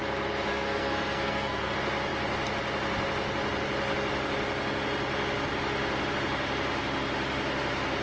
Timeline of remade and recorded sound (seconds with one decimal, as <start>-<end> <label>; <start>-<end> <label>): 0.0-0.5 recorded; 0.5-1.7 remade; 1.7-8.0 recorded